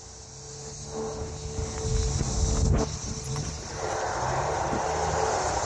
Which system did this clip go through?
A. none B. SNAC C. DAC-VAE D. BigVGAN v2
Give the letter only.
A